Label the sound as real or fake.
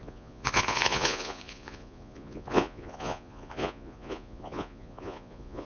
fake